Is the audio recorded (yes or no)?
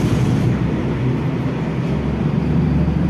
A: no